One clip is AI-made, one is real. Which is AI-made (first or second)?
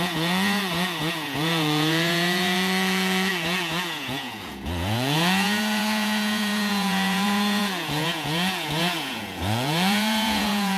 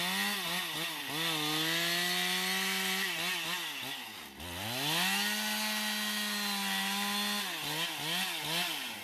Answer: first